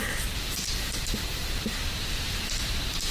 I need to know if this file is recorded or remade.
remade